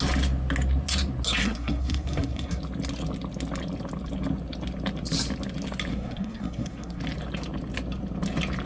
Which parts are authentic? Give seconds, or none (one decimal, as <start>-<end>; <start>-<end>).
0.0-1.4; 2.6-5.9; 7.0-8.7